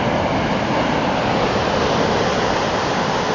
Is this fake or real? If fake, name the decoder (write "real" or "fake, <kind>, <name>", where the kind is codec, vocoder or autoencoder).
real